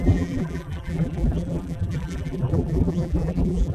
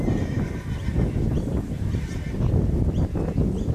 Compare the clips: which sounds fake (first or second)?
first